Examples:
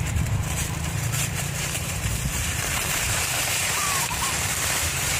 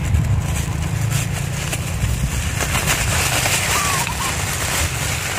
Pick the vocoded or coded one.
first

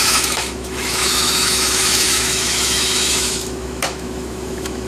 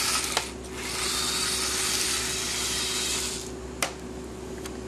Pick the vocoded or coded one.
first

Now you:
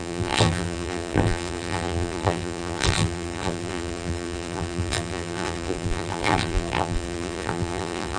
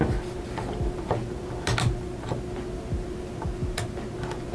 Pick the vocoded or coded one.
first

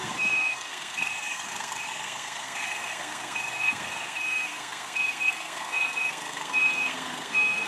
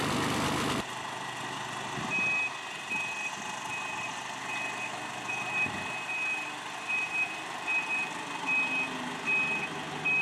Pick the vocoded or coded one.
first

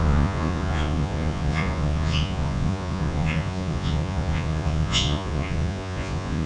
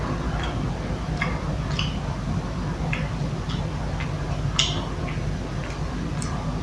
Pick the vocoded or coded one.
first